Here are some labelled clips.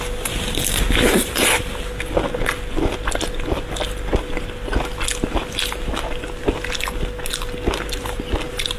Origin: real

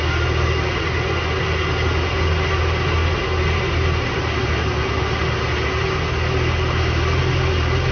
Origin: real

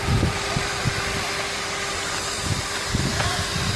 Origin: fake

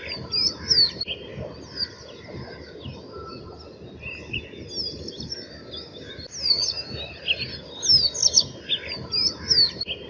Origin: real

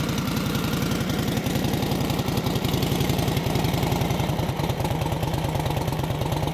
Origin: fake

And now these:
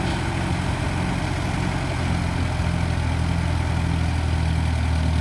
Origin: real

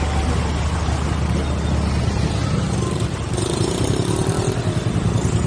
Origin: real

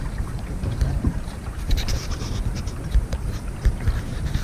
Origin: fake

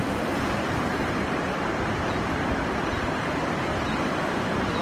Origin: fake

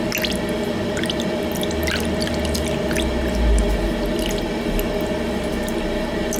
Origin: real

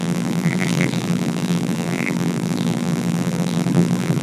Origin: fake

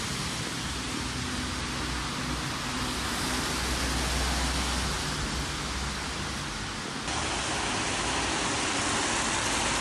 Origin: real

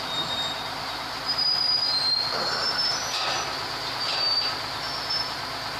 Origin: real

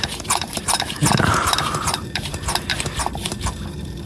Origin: fake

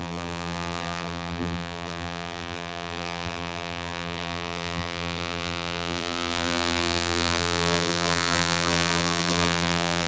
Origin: fake